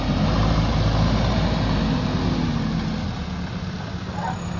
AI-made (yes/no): no